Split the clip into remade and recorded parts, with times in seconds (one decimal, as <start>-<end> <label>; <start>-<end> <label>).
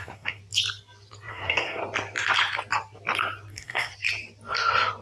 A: 0.0-0.4 remade; 0.4-1.3 recorded; 1.3-1.8 remade; 1.8-3.5 recorded; 3.5-3.9 remade; 3.9-5.0 recorded